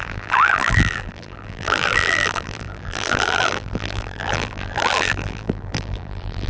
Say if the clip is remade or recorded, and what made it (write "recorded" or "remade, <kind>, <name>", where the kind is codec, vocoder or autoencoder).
remade, vocoder, BigVGAN v2